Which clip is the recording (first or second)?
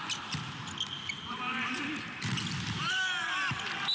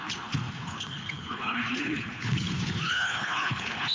first